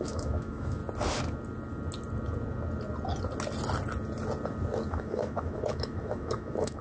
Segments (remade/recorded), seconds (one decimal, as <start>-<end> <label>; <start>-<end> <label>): 0.0-0.8 remade; 0.8-4.9 recorded; 4.9-6.8 remade